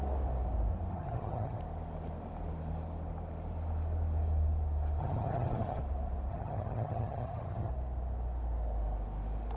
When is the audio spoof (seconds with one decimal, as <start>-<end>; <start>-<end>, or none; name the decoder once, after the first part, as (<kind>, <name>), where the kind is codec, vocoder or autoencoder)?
0.9-1.6 (vocoder, HiFi-GAN); 5.0-5.8; 6.3-7.7